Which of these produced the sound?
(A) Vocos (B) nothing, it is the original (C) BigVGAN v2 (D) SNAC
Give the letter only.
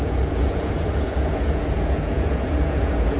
A